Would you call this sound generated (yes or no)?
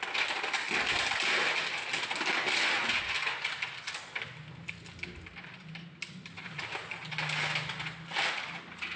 no